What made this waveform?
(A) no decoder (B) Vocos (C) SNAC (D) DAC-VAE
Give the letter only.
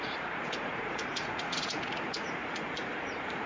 B